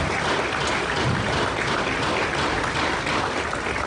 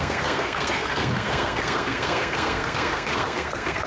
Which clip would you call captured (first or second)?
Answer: first